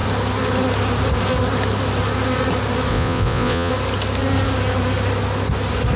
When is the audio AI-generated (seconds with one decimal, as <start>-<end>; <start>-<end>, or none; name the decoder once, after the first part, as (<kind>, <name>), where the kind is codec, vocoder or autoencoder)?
2.9-3.7 (vocoder, Vocos)